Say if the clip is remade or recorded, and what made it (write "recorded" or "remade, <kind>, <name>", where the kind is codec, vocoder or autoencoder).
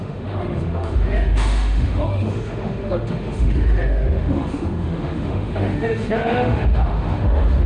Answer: remade, autoencoder, DAC-VAE